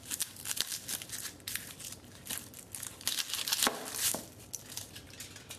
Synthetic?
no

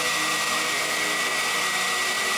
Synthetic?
no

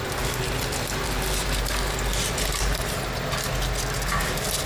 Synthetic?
no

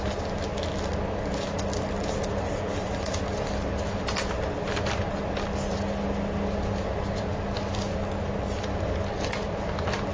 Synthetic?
no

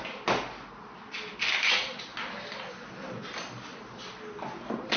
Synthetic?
no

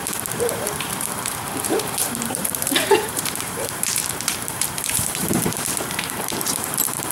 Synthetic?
yes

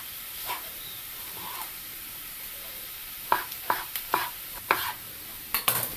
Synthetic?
yes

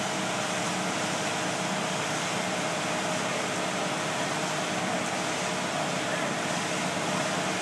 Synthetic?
yes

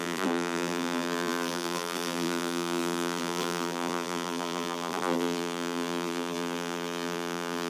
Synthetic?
yes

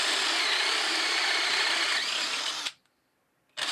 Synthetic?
no